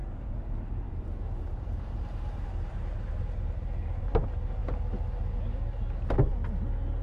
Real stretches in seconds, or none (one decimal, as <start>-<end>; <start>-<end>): 4.1-7.0